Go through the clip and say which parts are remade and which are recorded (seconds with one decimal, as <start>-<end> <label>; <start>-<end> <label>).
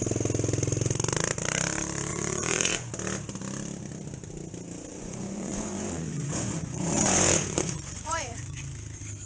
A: 0.0-2.1 recorded; 2.1-2.9 remade; 2.9-4.9 recorded; 4.9-8.6 remade; 8.6-9.3 recorded